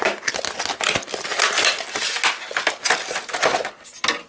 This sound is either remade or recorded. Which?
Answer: recorded